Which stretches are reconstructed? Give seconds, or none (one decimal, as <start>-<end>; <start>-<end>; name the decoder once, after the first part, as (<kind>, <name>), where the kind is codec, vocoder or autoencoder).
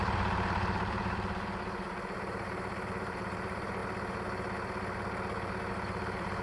0.0-3.8 (vocoder, BigVGAN v2); 5.7-6.4